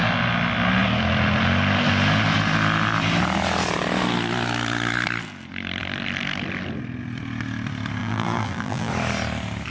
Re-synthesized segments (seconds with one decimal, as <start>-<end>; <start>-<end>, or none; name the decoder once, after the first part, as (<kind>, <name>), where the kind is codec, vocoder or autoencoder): 8.0-8.9 (vocoder, BigVGAN v2)